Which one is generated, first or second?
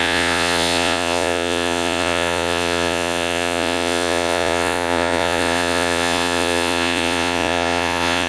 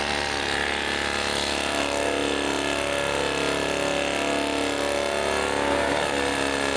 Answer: first